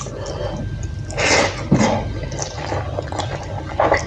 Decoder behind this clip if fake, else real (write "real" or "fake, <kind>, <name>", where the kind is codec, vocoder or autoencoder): real